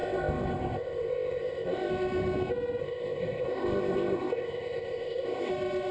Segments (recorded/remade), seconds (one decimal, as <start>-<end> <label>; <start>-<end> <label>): 0.0-1.9 remade; 1.9-2.8 recorded; 2.8-5.5 remade; 5.5-5.9 recorded